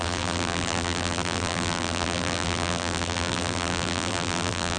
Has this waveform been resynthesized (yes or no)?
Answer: yes